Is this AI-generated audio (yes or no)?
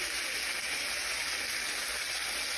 no